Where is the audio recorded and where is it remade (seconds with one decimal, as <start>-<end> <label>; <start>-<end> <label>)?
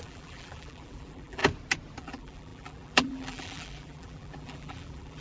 0.0-1.4 remade; 1.4-2.0 recorded; 2.0-5.2 remade